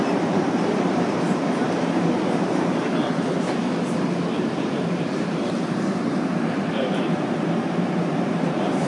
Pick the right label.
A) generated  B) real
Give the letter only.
A